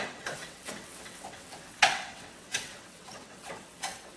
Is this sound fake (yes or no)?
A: yes